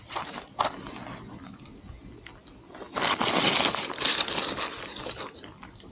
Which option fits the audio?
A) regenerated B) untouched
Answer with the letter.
B